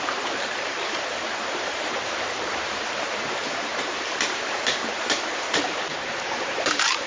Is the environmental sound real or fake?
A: fake